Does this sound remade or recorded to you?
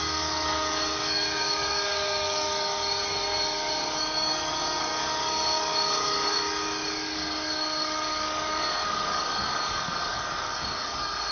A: remade